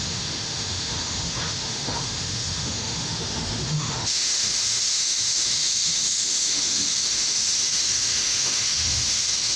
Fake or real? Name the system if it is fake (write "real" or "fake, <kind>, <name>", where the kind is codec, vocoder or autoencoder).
fake, autoencoder, DAC-VAE